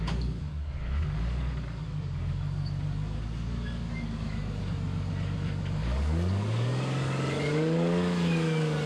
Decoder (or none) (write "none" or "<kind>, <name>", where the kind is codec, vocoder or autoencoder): codec, DAC